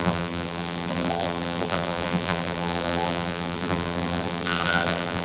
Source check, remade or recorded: remade